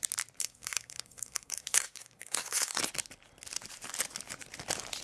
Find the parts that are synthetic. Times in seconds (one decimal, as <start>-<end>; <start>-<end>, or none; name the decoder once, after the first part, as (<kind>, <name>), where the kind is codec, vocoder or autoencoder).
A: 0.4-2.8 (codec, SNAC)